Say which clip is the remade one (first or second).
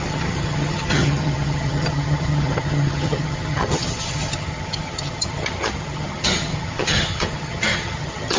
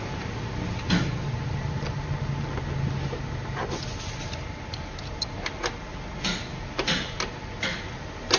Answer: first